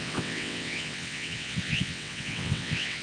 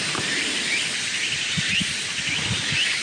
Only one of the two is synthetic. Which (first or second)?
first